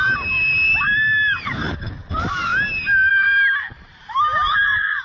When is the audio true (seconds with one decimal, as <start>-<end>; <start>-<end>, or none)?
2.5-3.1

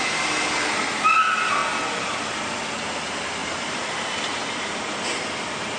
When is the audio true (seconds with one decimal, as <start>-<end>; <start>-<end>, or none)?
0.0-3.4; 3.9-5.8

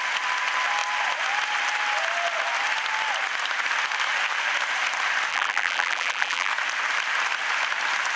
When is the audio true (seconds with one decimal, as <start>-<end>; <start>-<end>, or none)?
0.0-5.3; 6.5-8.2